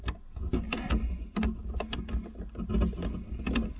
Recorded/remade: recorded